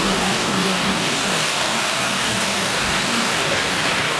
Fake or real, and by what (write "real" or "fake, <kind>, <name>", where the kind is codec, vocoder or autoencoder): fake, codec, DAC